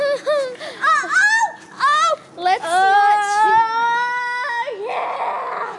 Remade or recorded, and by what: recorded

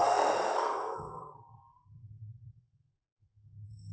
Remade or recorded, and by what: remade, codec, SNAC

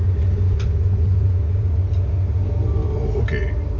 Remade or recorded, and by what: recorded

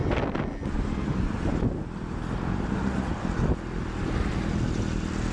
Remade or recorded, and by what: recorded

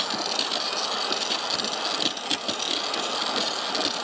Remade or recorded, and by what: recorded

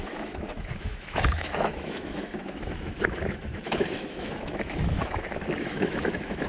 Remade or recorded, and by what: remade, autoencoder, DAC-VAE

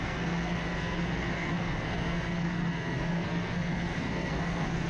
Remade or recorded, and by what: remade, codec, SNAC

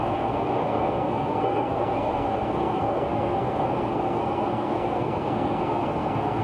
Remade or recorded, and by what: remade, codec, SNAC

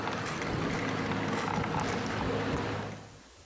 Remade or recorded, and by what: recorded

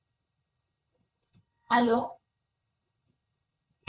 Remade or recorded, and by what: remade, codec, HILCodec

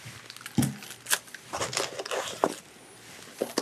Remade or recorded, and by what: recorded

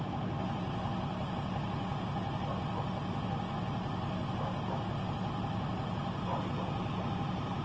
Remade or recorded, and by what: recorded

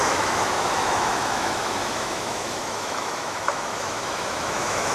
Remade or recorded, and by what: remade, autoencoder, DAC-VAE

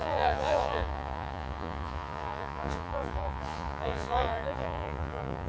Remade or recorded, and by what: remade, vocoder, Vocos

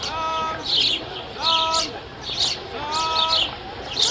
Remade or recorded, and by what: recorded